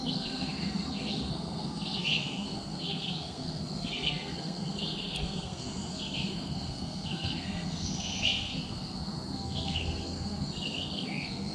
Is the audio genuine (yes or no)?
no